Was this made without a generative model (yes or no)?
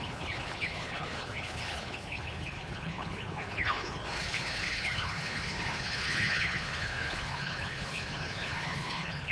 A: no